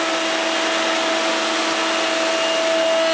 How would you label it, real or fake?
real